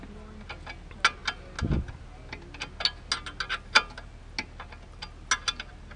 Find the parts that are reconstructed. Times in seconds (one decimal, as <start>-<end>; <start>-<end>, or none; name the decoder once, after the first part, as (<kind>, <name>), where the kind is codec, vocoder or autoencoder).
none